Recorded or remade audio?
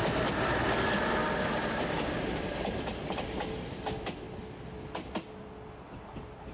recorded